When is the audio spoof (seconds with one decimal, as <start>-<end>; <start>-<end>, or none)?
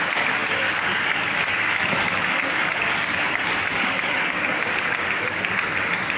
0.0-6.2